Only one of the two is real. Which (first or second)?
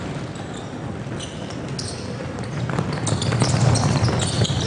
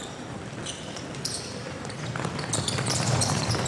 first